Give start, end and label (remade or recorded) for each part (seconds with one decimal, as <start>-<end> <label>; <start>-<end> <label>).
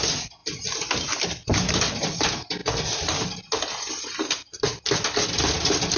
0.0-6.0 recorded